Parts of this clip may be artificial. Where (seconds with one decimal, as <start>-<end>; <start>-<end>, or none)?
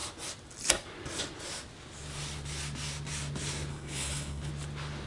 3.7-4.5